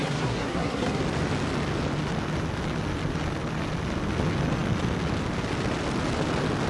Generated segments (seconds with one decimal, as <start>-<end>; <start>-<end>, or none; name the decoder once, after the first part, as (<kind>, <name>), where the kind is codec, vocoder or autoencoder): 0.0-1.0 (codec, SNAC)